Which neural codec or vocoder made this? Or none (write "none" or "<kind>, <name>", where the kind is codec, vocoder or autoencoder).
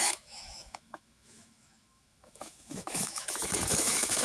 autoencoder, DAC-VAE